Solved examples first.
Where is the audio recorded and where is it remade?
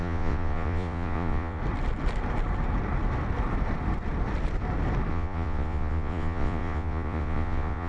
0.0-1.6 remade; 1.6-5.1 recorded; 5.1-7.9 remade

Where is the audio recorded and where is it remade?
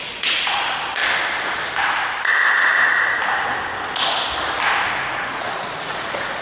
0.0-1.0 remade; 1.0-4.8 recorded; 4.8-6.4 remade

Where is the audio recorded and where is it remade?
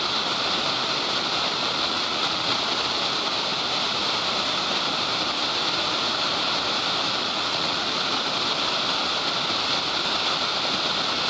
0.0-1.6 recorded; 1.6-2.6 remade; 2.6-7.2 recorded; 7.2-7.9 remade; 7.9-11.3 recorded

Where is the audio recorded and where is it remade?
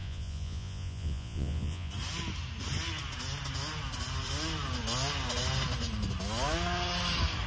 0.0-1.9 remade; 1.9-7.5 recorded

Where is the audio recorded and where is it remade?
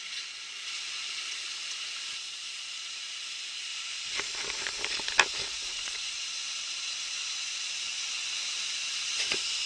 0.0-3.7 remade; 3.7-5.7 recorded; 5.7-7.9 remade; 7.9-8.5 recorded; 8.5-9.7 remade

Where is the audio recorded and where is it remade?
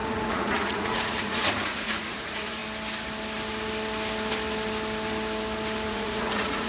0.0-2.6 remade; 2.6-5.9 recorded; 5.9-6.7 remade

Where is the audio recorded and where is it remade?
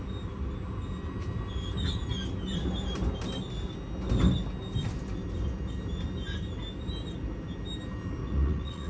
0.0-8.2 recorded; 8.2-8.9 remade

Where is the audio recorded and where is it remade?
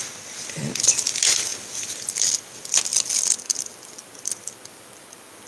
0.0-5.5 recorded